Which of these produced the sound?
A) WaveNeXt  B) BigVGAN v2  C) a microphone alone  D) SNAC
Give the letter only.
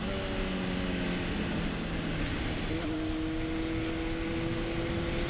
C